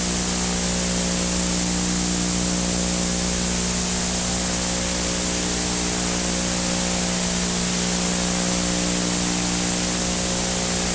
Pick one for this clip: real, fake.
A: real